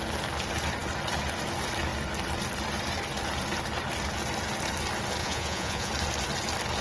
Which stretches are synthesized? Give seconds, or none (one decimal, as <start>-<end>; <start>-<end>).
5.2-5.9